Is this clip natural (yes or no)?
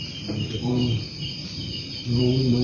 no